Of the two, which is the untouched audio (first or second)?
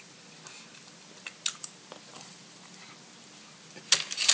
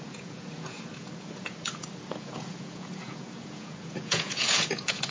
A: first